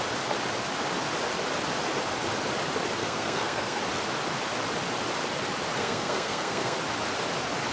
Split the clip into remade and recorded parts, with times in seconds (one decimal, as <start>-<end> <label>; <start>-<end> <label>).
0.0-3.0 recorded; 3.0-3.8 remade; 3.8-5.8 recorded; 5.8-6.8 remade; 6.8-7.7 recorded